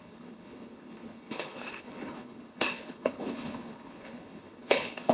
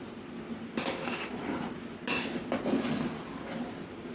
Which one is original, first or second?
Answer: second